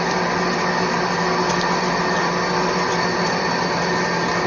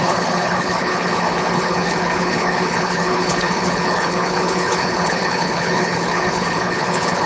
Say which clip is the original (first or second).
first